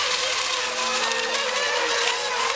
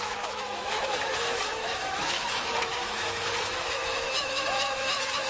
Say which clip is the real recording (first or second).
first